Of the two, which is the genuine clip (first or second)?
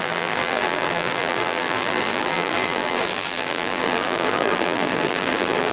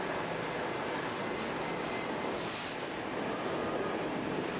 second